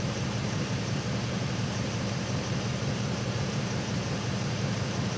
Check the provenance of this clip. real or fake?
fake